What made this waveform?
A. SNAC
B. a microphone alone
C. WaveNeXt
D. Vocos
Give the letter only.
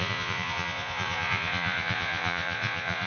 D